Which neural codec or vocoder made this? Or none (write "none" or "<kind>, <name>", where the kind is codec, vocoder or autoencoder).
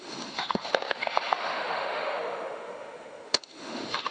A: autoencoder, DAC-VAE